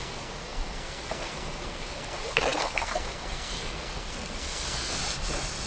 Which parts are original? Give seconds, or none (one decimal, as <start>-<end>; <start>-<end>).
5.0-5.7